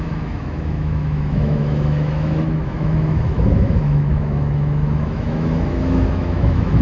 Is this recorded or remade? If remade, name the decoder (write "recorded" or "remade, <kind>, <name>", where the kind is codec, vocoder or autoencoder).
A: remade, autoencoder, DAC-VAE